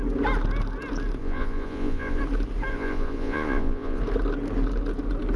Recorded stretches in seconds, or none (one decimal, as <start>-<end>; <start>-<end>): 0.0-1.2; 2.2-2.7; 4.0-5.4